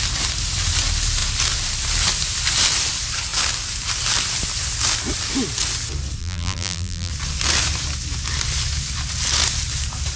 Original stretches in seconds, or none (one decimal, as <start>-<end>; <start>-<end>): 0.0-6.2; 7.1-10.2